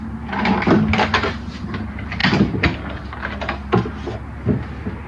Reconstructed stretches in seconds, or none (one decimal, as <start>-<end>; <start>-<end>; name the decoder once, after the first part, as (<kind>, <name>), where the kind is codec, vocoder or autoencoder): none